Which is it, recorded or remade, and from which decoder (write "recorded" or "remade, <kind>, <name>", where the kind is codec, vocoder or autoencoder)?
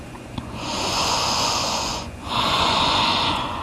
remade, vocoder, Vocos